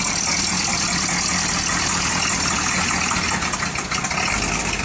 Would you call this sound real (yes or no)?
yes